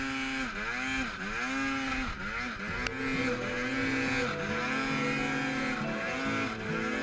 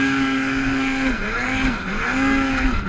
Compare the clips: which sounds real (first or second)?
first